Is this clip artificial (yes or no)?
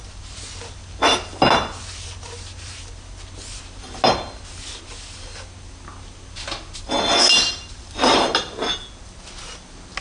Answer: no